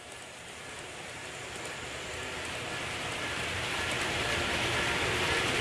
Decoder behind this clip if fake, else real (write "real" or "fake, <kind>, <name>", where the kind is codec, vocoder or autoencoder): fake, vocoder, BigVGAN v2